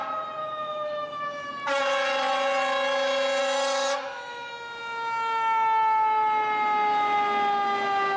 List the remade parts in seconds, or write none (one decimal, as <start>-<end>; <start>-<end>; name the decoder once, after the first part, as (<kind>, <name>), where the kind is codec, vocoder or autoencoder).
0.4-1.5 (autoencoder, DAC-VAE); 3.4-4.5